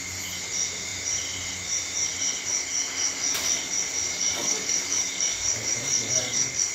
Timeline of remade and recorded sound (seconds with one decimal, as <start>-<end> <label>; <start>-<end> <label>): 0.0-4.0 recorded; 4.0-6.7 remade

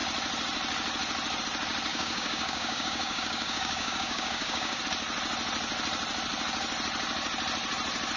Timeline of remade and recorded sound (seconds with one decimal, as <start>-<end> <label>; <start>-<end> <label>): 0.0-1.9 recorded; 1.9-4.8 remade; 4.8-8.2 recorded

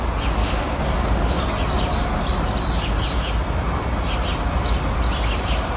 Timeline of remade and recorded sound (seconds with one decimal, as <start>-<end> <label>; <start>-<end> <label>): 0.0-0.4 recorded; 0.4-1.4 remade; 1.4-5.8 recorded

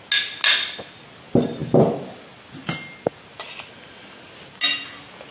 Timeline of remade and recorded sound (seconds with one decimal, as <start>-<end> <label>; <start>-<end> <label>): 0.0-5.3 recorded

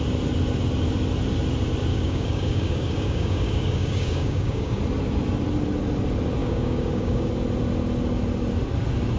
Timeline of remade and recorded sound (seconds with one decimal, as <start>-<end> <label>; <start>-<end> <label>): 0.0-1.9 recorded; 1.9-4.8 remade; 4.8-6.4 recorded; 6.4-7.3 remade; 7.3-9.2 recorded

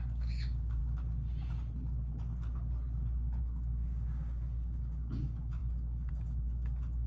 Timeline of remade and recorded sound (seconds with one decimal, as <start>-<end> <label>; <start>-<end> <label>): 0.0-0.8 remade; 0.8-3.4 recorded; 3.4-7.1 remade

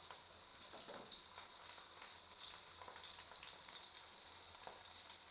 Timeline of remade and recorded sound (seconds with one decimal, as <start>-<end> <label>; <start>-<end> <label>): 0.0-5.3 recorded